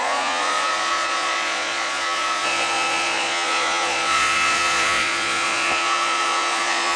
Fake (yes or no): yes